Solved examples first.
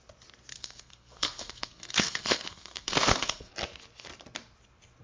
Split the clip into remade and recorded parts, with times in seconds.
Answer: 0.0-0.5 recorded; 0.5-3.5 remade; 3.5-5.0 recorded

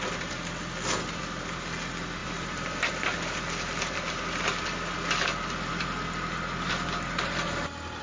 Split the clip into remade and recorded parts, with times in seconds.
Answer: 0.0-8.0 recorded

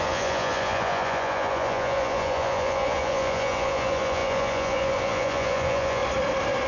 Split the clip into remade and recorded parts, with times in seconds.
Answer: 0.0-6.0 remade; 6.0-6.7 recorded

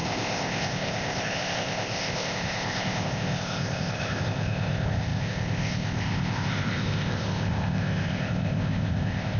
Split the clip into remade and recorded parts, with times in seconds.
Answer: 0.0-9.4 remade